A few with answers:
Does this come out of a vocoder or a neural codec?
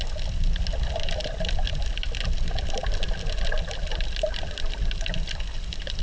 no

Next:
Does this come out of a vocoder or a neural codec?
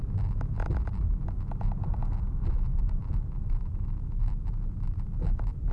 yes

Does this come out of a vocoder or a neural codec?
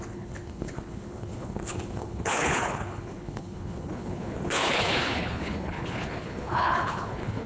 yes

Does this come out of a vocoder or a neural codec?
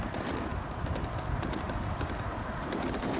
no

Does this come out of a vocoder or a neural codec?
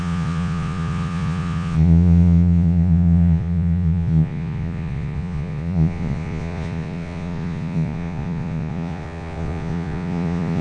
yes